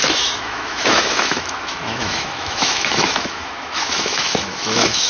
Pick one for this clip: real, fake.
fake